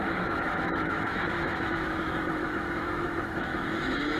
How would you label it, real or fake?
fake